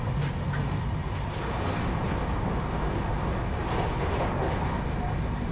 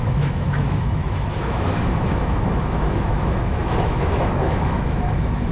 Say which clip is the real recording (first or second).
first